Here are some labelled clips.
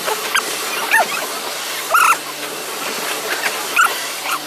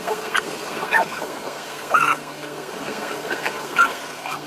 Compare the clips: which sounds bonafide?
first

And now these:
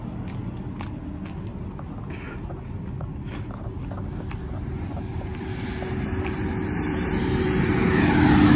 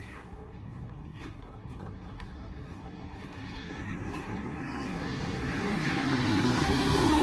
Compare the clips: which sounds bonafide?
first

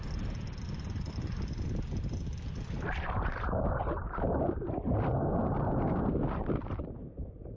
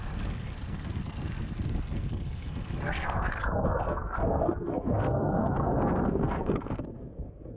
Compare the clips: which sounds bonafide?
first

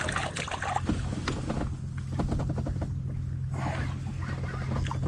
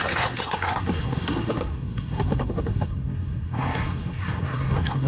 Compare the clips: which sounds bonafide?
first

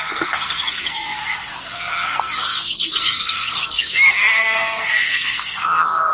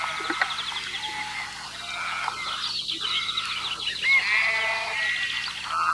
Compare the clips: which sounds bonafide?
second